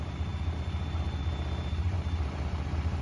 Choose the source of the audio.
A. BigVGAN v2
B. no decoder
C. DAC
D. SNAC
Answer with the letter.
A